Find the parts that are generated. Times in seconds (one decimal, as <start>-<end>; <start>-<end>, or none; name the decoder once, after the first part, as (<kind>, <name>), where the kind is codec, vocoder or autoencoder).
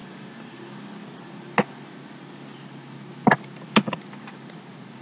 none